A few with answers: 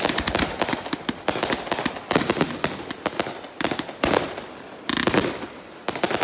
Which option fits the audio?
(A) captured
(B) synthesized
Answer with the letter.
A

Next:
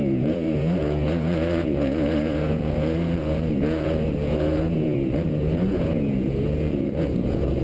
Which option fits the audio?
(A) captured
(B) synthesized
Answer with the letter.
B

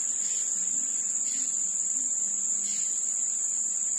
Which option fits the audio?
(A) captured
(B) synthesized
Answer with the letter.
A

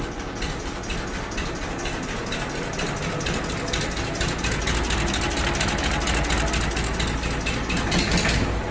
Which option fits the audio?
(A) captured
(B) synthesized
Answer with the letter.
A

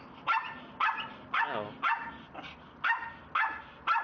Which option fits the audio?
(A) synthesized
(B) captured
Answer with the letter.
B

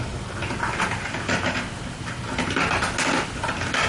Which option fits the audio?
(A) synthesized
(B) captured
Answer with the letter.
B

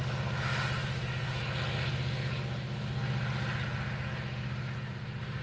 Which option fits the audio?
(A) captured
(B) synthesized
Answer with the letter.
A